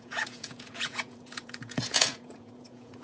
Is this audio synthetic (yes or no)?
yes